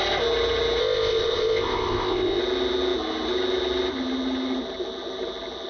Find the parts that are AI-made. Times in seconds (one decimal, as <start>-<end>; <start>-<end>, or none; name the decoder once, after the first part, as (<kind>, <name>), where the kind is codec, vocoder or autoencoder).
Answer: 0.8-2.4 (codec, ZipCodec)